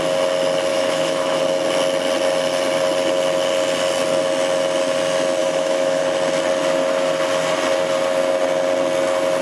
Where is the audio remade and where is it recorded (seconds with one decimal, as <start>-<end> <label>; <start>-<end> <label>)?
0.0-0.7 recorded; 0.7-1.4 remade; 1.4-5.4 recorded; 5.4-6.0 remade; 6.0-9.4 recorded